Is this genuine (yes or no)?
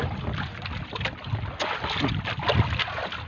yes